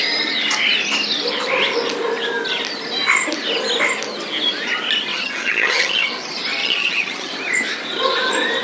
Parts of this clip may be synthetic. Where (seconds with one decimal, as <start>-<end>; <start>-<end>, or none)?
5.1-6.1; 6.6-7.3